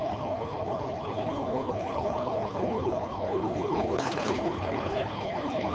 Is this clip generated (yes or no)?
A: yes